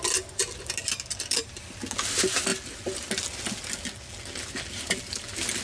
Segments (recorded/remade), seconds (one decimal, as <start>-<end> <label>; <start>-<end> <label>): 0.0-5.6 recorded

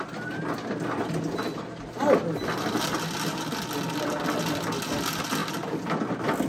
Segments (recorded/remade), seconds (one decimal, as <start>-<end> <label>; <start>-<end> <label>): 0.0-6.5 recorded

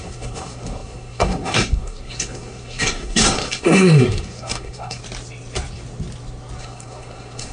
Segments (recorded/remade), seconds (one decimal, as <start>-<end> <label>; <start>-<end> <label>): 0.0-5.0 remade; 5.0-6.6 recorded; 6.6-7.5 remade

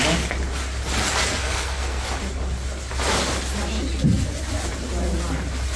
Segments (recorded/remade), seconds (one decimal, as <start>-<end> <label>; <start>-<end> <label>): 0.0-1.4 recorded; 1.4-2.0 remade; 2.0-5.8 recorded